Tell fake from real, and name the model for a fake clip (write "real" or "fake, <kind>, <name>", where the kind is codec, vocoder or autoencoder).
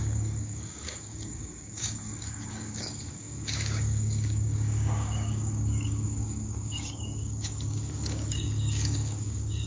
fake, codec, DAC